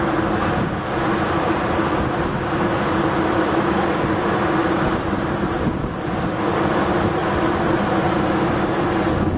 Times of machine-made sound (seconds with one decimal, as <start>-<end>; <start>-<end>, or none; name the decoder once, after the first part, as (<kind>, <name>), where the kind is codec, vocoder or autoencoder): none